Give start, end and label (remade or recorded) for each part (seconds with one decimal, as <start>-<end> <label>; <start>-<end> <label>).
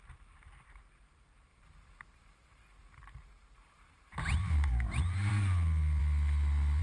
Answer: 0.0-1.5 recorded; 1.5-5.3 remade; 5.3-6.8 recorded